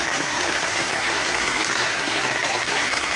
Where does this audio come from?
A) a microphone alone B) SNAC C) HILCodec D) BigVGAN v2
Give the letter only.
B